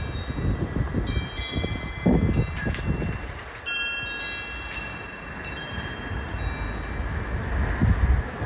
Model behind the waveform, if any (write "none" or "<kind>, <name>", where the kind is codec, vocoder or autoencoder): none